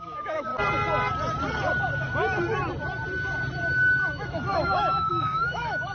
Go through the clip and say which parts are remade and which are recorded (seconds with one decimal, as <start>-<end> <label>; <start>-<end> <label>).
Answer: 0.0-0.5 remade; 0.5-4.0 recorded; 4.0-5.9 remade

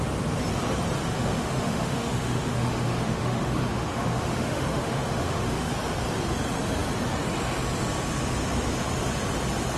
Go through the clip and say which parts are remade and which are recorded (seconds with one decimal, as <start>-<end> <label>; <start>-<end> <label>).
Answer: 0.0-1.0 recorded; 1.0-5.7 remade; 5.7-9.8 recorded

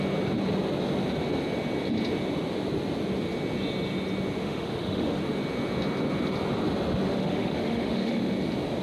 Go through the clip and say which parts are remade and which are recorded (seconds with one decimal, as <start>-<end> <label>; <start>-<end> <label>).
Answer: 0.0-4.4 recorded; 4.4-5.2 remade; 5.2-7.1 recorded; 7.1-8.3 remade; 8.3-8.8 recorded

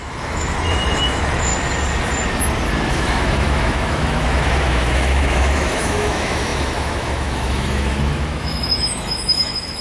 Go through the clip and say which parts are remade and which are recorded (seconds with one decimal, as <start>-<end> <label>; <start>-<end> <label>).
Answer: 0.0-1.5 remade; 1.5-2.9 recorded; 2.9-9.8 remade

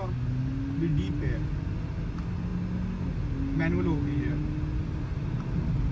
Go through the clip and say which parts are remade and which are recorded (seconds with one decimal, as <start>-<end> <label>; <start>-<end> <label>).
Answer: 0.0-5.9 recorded

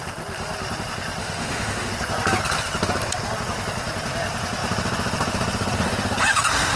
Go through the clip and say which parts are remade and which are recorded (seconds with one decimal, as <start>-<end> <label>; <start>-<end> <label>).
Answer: 0.0-1.2 recorded; 1.2-1.9 remade; 1.9-6.8 recorded